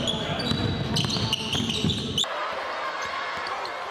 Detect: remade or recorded recorded